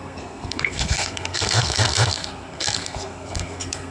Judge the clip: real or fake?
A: fake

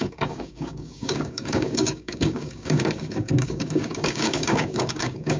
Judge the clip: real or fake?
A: fake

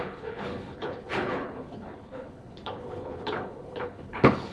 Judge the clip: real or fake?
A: fake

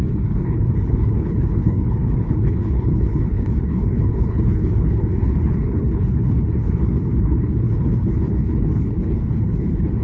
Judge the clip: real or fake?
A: fake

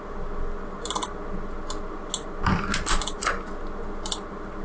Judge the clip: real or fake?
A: real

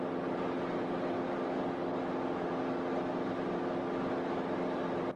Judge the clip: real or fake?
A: real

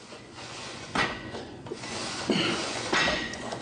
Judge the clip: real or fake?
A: fake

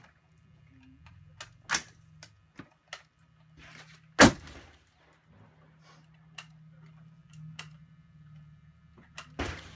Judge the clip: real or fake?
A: real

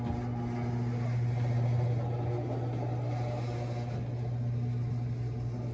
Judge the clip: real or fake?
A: real